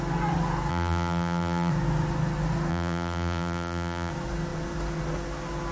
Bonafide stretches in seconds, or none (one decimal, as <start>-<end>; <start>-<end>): 0.0-0.7; 1.7-2.7; 4.1-5.7